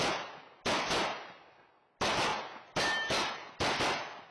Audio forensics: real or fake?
real